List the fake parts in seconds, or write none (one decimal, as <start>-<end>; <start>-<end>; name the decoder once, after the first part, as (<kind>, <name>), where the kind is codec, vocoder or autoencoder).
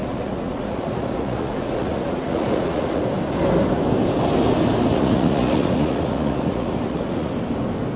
0.0-3.0 (vocoder, Vocos); 4.9-7.3